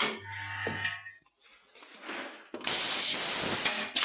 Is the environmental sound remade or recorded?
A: recorded